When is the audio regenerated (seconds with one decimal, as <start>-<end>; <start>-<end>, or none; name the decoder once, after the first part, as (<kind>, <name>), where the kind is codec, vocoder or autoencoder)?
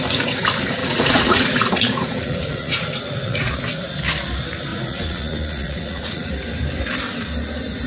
0.8-3.6 (vocoder, Vocos); 4.7-6.3